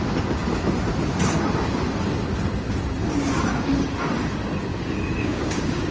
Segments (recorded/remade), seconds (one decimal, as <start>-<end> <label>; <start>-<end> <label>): 0.0-4.7 recorded; 4.7-5.9 remade